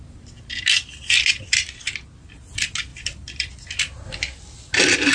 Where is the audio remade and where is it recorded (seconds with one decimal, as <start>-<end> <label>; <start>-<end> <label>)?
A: 0.0-2.9 recorded; 2.9-3.5 remade; 3.5-5.1 recorded